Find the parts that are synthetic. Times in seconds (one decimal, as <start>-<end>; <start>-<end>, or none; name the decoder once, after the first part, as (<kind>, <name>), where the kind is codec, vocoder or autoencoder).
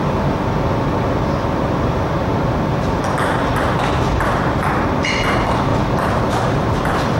5.7-7.2 (vocoder, BigVGAN v2)